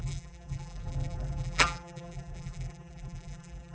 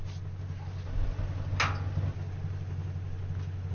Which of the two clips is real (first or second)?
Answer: second